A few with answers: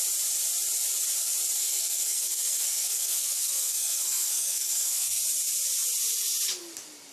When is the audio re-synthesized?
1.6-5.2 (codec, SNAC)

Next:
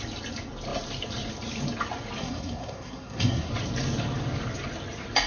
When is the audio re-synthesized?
2.2-3.5 (codec, SNAC)

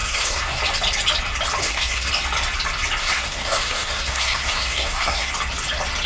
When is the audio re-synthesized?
0.0-0.6 (codec, SNAC); 1.6-2.1; 3.0-5.3

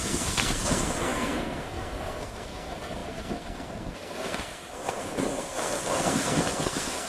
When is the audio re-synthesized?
0.0-7.1 (codec, SNAC)

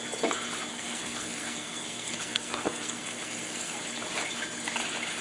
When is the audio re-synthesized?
0.7-3.8 (codec, SNAC)